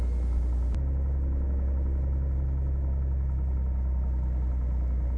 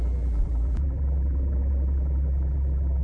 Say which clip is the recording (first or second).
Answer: first